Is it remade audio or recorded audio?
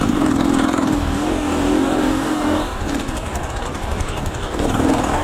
remade